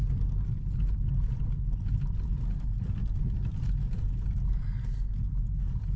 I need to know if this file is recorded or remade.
recorded